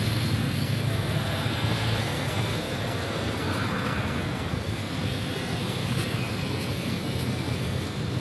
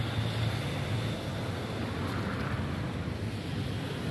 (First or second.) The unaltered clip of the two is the second